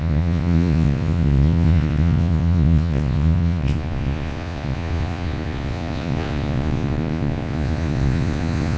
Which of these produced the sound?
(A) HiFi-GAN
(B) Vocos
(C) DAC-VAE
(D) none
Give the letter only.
B